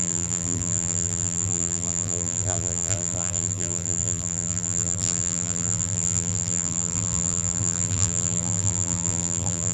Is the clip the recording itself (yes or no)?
no